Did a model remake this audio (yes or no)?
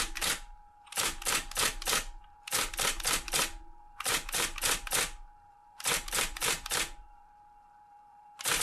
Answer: yes